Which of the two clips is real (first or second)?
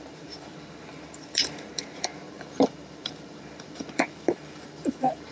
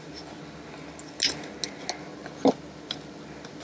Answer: second